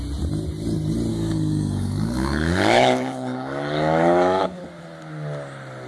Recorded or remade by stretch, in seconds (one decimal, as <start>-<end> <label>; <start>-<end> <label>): 0.0-1.1 recorded; 1.1-4.6 remade; 4.6-5.9 recorded